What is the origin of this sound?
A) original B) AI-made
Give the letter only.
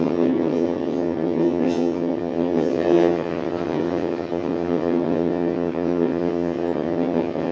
B